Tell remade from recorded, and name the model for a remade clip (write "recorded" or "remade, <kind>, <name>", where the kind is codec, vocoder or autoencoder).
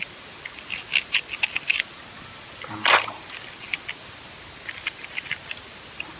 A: recorded